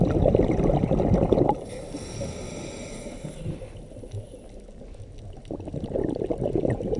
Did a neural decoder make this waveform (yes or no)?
no